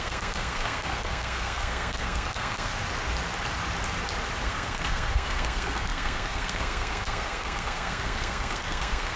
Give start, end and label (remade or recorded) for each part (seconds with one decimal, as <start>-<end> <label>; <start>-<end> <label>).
0.0-2.7 remade; 2.7-4.4 recorded; 4.4-9.2 remade